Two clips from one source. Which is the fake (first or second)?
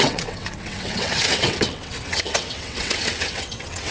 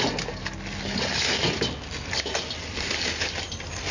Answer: first